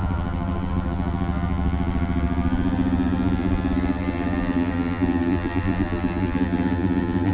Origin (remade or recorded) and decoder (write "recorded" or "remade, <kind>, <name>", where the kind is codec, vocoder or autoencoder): remade, vocoder, BigVGAN v2